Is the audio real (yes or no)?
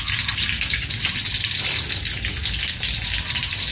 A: yes